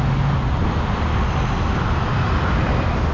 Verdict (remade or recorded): recorded